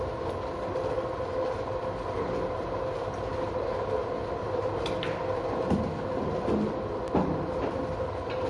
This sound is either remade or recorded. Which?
recorded